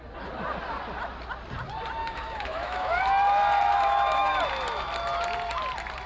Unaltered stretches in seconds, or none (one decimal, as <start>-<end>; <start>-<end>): 0.0-2.0; 3.0-3.7; 4.3-6.1